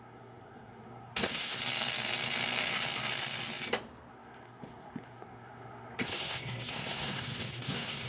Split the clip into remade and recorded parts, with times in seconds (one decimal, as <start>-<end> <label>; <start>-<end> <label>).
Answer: 0.0-1.6 remade; 1.6-4.1 recorded; 4.1-8.1 remade